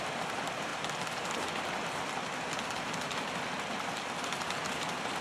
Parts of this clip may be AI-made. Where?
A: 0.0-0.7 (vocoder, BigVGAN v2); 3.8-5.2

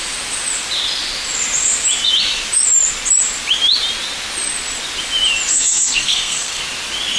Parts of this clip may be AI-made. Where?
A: 5.5-6.6 (codec, SNAC)